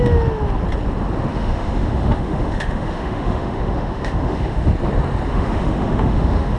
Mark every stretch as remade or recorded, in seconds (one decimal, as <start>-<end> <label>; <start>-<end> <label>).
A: 0.0-1.3 recorded; 1.3-4.7 remade; 4.7-5.3 recorded; 5.3-6.6 remade